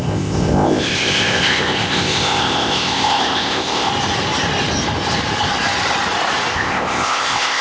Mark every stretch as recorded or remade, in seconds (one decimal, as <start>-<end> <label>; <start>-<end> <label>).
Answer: 0.0-3.9 remade; 3.9-6.5 recorded; 6.5-7.6 remade

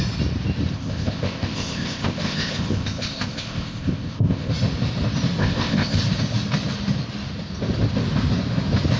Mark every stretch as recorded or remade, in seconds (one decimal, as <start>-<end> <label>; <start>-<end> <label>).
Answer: 0.0-0.7 recorded; 0.7-4.5 remade; 4.5-5.4 recorded; 5.4-6.0 remade; 6.0-9.0 recorded

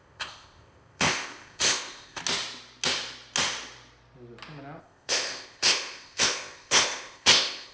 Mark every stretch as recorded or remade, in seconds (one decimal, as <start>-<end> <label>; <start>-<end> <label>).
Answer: 0.0-2.2 remade; 2.2-4.8 recorded; 4.8-7.7 remade

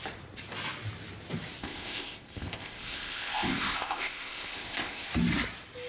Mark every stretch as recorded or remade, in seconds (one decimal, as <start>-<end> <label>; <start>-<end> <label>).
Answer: 0.0-1.6 recorded; 1.6-5.1 remade; 5.1-5.9 recorded

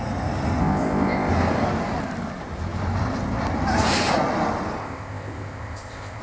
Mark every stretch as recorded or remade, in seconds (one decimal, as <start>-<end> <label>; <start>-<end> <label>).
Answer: 0.0-0.6 recorded; 0.6-1.3 remade; 1.3-4.8 recorded; 4.8-6.2 remade

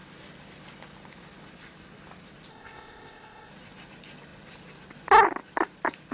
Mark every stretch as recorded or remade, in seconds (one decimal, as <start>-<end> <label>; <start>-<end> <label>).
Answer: 0.0-2.5 recorded; 2.5-3.5 remade; 3.5-6.1 recorded

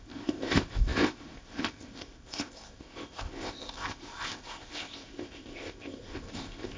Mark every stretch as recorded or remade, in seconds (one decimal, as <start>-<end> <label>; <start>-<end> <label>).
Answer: 0.0-6.8 remade